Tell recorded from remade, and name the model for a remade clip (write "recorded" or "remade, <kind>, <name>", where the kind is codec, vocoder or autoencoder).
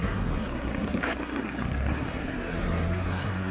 remade, codec, SNAC